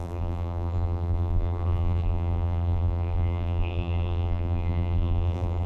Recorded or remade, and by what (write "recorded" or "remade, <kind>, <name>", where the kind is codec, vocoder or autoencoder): remade, vocoder, BigVGAN v2